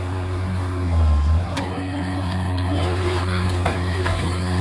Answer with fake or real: fake